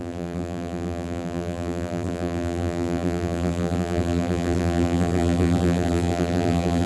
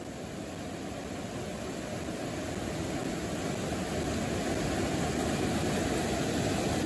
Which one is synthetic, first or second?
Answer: first